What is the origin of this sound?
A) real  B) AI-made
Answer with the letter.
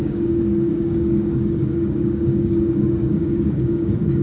B